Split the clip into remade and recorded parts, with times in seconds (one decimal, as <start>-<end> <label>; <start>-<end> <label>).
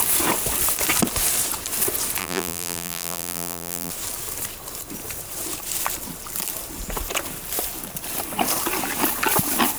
0.0-2.2 recorded; 2.2-3.9 remade; 3.9-9.8 recorded